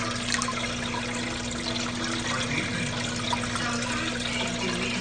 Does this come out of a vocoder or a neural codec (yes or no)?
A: no